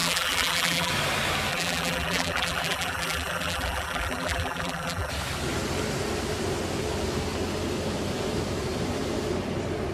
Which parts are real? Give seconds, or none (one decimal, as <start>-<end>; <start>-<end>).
0.9-1.5; 5.1-9.9